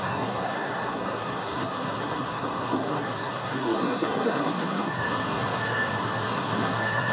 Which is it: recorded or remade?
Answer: remade